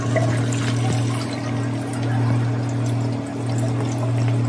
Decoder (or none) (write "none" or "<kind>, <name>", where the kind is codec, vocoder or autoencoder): none